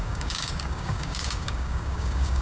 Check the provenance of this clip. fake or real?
fake